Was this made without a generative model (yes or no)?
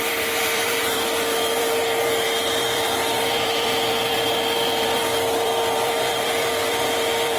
no